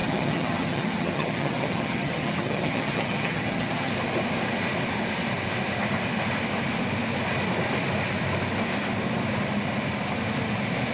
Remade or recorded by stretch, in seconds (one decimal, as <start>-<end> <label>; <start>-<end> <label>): 0.0-3.9 remade; 3.9-10.9 recorded